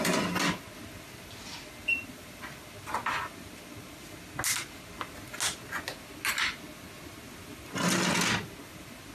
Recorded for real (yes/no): yes